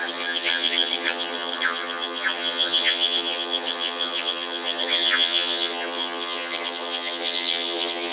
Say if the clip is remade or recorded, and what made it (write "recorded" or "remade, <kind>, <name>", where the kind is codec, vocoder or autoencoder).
remade, vocoder, HiFi-GAN